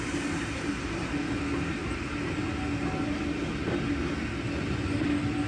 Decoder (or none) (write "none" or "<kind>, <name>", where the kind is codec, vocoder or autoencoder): none